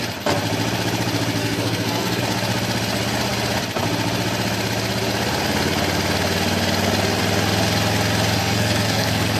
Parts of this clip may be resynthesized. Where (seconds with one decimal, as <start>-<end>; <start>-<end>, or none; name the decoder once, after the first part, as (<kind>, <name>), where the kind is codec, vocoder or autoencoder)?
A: 1.4-2.2 (codec, SNAC); 8.4-9.4